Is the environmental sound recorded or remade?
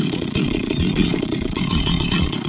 remade